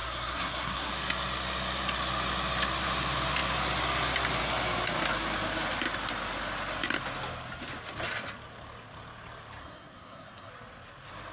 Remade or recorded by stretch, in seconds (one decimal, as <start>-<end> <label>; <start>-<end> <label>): 0.0-0.9 remade; 0.9-9.6 recorded; 9.6-10.5 remade; 10.5-11.3 recorded

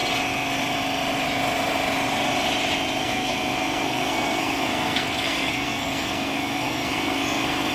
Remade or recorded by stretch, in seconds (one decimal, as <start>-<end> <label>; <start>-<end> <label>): 0.0-3.0 recorded; 3.0-7.7 remade

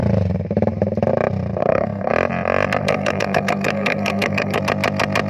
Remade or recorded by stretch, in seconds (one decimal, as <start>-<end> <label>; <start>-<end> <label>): 0.0-1.6 recorded; 1.6-2.1 remade; 2.1-2.8 recorded; 2.8-4.6 remade; 4.6-5.3 recorded

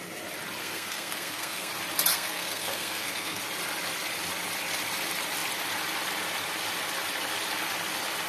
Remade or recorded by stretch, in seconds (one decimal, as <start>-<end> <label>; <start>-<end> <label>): 0.0-0.6 recorded; 0.6-1.7 remade; 1.7-2.1 recorded; 2.1-3.4 remade; 3.4-8.3 recorded

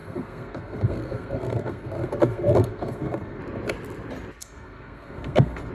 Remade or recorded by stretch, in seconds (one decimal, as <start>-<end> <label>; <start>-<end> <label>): 0.0-3.4 remade; 3.4-4.4 recorded; 4.4-5.7 remade

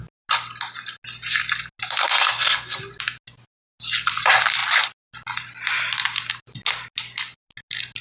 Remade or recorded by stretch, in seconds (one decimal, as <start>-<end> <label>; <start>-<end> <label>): 0.0-2.0 recorded; 2.0-2.8 remade; 2.8-8.0 recorded

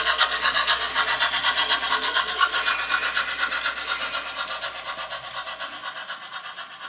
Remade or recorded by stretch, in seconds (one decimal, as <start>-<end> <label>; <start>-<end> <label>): 0.0-0.9 remade; 0.9-1.9 recorded; 1.9-2.5 remade; 2.5-6.9 recorded